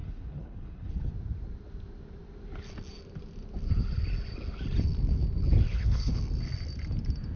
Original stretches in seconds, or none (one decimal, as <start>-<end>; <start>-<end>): 1.1-5.7; 6.2-7.4